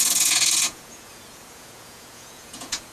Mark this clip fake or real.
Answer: fake